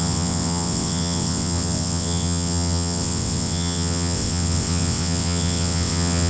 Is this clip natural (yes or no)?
no